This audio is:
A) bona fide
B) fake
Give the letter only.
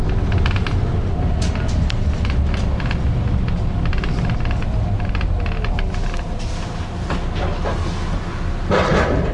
A